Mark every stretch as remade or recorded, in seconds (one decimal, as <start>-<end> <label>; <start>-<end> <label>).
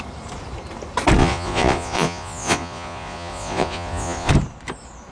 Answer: 0.0-1.2 recorded; 1.2-4.3 remade; 4.3-5.1 recorded